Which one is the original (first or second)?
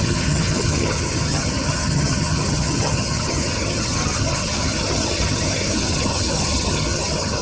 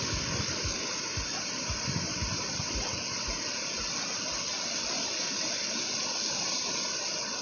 second